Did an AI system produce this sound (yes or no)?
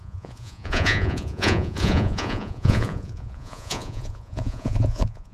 yes